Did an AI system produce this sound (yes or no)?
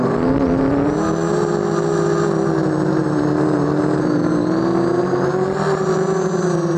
no